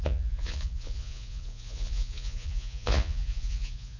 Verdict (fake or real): fake